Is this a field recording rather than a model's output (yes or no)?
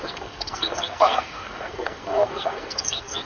no